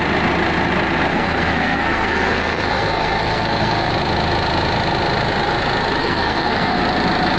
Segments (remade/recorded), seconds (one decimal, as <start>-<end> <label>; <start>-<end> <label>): 0.0-1.1 recorded; 1.1-3.9 remade; 3.9-6.0 recorded; 6.0-6.8 remade; 6.8-7.4 recorded